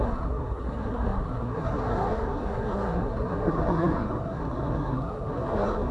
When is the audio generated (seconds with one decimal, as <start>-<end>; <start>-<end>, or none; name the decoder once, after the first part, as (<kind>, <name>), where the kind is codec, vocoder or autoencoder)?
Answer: 0.0-5.9 (codec, SNAC)